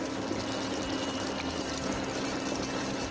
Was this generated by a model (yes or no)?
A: no